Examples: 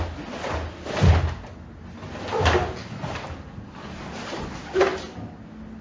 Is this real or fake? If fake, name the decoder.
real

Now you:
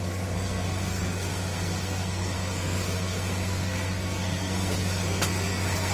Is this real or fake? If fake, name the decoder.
fake, codec, SNAC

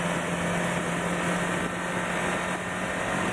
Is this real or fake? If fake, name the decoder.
real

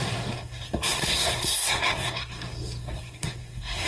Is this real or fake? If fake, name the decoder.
fake, codec, SNAC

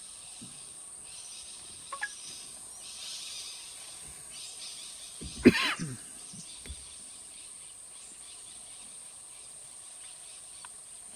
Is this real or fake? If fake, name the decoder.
real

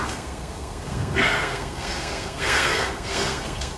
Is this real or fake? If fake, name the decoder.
fake, codec, SNAC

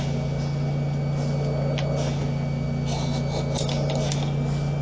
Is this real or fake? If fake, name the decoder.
real